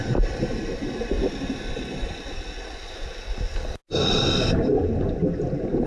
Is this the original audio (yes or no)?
yes